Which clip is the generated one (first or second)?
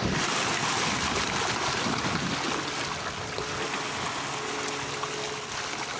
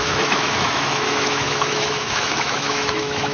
second